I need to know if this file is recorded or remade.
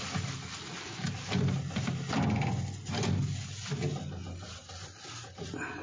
recorded